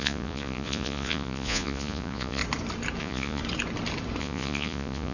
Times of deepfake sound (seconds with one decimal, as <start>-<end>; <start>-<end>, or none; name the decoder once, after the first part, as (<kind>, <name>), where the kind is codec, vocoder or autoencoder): 0.0-2.4 (vocoder, Vocos); 3.0-3.4; 4.2-5.1